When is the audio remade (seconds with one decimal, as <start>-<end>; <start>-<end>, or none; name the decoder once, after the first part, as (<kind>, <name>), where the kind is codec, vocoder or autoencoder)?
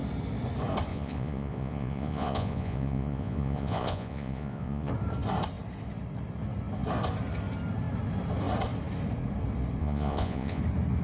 0.9-4.9 (vocoder, Vocos); 9.8-10.6